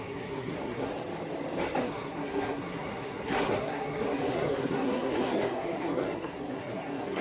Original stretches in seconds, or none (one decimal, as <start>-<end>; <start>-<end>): 0.9-1.8